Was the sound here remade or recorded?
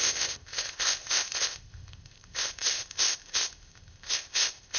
remade